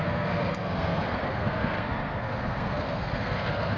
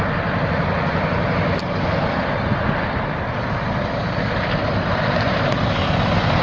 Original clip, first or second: second